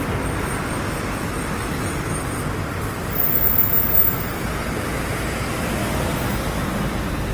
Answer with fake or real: real